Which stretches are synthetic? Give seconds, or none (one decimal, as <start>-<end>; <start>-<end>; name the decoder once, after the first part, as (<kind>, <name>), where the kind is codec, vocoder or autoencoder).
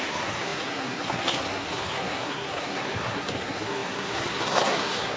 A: 0.0-5.2 (codec, SNAC)